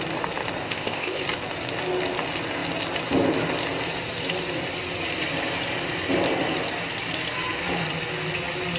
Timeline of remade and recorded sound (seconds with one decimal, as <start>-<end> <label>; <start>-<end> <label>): 0.0-0.6 recorded; 0.6-1.2 remade; 1.2-8.8 recorded